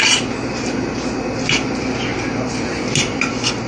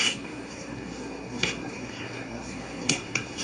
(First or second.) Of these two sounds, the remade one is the second